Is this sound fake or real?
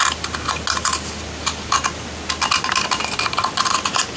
real